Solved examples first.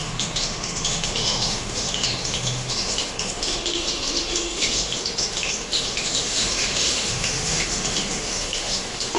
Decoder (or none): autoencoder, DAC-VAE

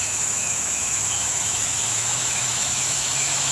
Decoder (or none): autoencoder, DAC-VAE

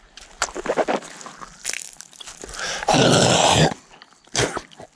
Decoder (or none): none